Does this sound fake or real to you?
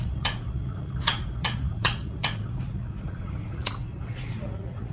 fake